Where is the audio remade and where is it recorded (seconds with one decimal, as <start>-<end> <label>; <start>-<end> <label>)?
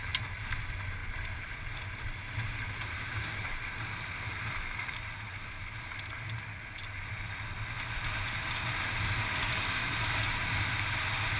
0.0-9.4 recorded; 9.4-10.3 remade; 10.3-11.4 recorded